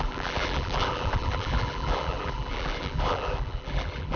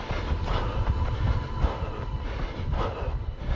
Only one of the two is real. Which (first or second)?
second